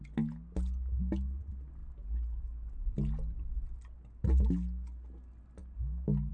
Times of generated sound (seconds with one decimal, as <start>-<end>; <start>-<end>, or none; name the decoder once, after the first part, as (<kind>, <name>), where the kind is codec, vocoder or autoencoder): none